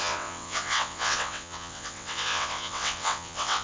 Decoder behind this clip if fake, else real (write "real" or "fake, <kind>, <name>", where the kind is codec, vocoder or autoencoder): fake, vocoder, WaveNeXt